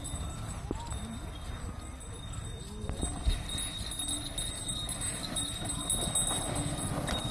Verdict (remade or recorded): recorded